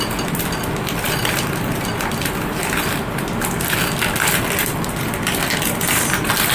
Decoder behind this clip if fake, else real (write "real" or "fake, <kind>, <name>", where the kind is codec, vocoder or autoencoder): real